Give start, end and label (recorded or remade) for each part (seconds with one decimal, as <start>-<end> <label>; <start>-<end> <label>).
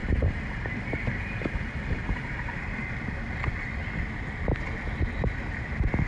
0.0-3.7 remade; 3.7-6.1 recorded